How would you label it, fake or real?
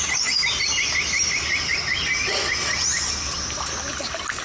real